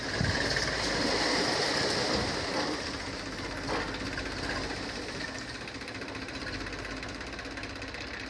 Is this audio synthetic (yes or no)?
no